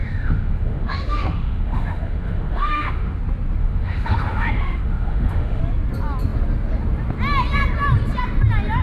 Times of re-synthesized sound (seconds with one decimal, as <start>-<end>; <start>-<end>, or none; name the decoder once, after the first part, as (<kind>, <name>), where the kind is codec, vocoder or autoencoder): 0.0-3.2 (autoencoder, DAC-VAE); 3.6-5.6